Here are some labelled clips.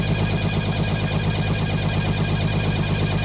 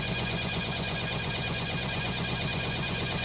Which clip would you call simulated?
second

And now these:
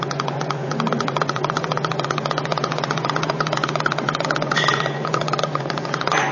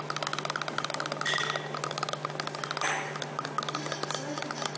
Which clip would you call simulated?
first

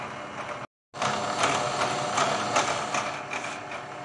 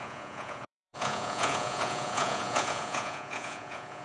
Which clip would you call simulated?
second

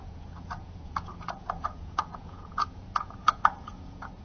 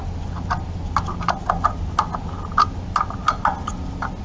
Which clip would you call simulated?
first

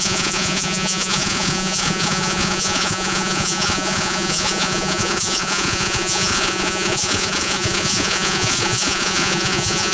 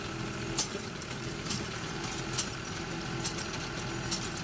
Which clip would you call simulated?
first